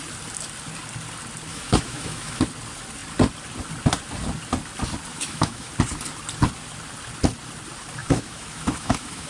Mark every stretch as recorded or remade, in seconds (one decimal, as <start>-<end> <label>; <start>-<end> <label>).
0.0-1.5 recorded; 1.5-2.4 remade; 2.4-5.1 recorded; 5.1-5.7 remade; 5.7-8.0 recorded; 8.0-9.3 remade